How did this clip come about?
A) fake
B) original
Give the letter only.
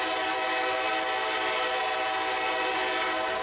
B